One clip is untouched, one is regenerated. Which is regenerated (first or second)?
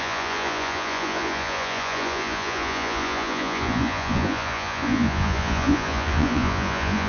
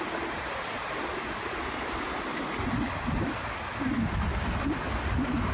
first